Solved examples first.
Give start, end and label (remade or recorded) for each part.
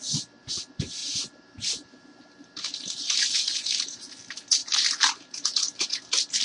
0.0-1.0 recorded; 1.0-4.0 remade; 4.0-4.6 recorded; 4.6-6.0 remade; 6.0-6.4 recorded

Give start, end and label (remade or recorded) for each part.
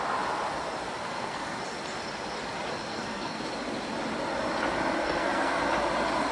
0.0-1.0 recorded; 1.0-1.6 remade; 1.6-2.9 recorded; 2.9-3.4 remade; 3.4-5.0 recorded; 5.0-5.6 remade; 5.6-6.3 recorded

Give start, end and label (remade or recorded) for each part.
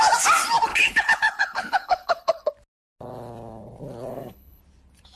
0.0-0.7 recorded; 0.7-2.5 remade; 2.5-4.1 recorded; 4.1-4.6 remade; 4.6-5.2 recorded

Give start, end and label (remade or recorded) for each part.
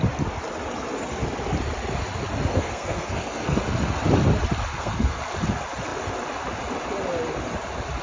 0.0-2.5 recorded; 2.5-3.6 remade; 3.6-4.7 recorded; 4.7-5.2 remade; 5.2-8.0 recorded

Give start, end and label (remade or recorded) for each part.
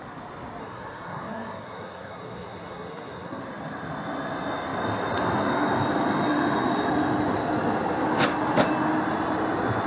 0.0-0.6 recorded; 0.6-3.4 remade; 3.4-9.9 recorded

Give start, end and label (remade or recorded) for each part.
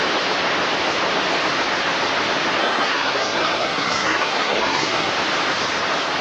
0.0-2.6 recorded; 2.6-5.1 remade; 5.1-6.2 recorded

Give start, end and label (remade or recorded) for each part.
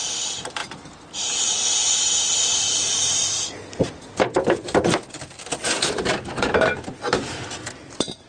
0.0-8.3 recorded